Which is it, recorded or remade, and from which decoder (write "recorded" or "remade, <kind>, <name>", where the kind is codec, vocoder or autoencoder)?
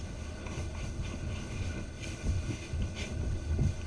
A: remade, codec, HILCodec